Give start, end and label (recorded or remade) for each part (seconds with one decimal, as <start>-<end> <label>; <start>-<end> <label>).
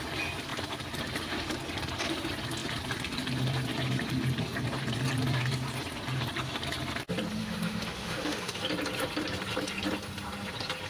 0.0-7.4 recorded; 7.4-8.6 remade; 8.6-10.9 recorded